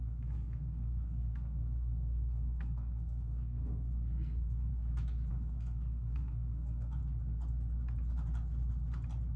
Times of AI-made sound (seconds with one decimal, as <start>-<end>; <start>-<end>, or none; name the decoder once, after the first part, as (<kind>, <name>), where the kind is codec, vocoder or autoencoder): 0.0-4.7 (codec, SNAC); 5.3-7.0